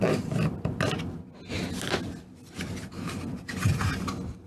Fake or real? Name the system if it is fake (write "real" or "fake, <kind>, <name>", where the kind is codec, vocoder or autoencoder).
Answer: real